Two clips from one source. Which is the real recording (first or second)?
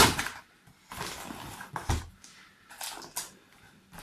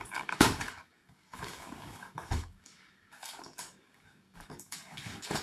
first